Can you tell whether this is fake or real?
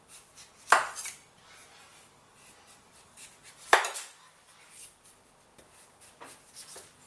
fake